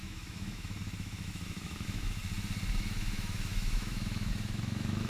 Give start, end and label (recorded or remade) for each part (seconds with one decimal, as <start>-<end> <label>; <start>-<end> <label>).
0.0-2.2 remade; 2.2-2.7 recorded; 2.7-5.1 remade